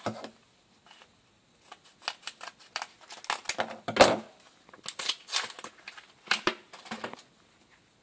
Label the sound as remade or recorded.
recorded